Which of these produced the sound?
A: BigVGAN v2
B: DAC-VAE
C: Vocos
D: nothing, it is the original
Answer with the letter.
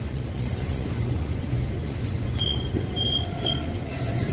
C